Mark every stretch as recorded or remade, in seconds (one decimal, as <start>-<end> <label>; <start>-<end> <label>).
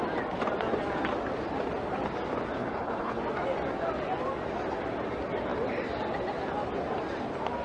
0.0-2.6 recorded; 2.6-3.2 remade; 3.2-7.6 recorded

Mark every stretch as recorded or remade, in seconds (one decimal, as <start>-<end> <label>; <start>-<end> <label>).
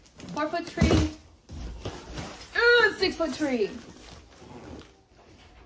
0.0-5.7 recorded